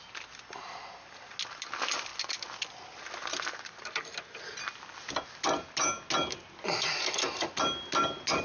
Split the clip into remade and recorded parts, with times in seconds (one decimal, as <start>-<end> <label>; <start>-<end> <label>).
0.0-8.4 recorded